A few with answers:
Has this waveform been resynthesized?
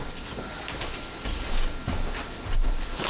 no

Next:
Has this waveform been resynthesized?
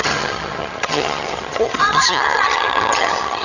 yes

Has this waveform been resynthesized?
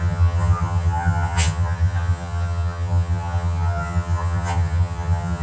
yes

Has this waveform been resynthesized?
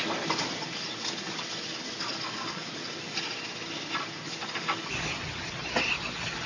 no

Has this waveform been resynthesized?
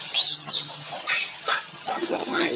yes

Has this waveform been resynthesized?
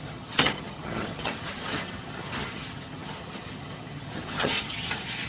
yes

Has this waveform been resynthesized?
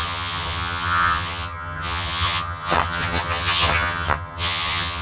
yes